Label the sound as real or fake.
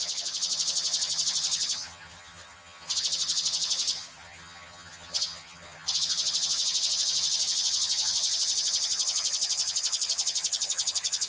fake